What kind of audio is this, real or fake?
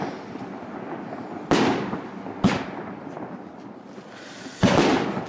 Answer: real